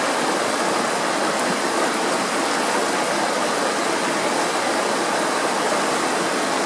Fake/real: real